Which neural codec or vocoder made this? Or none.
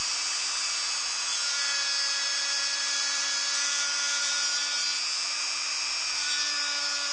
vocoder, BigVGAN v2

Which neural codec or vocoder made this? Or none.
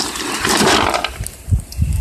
none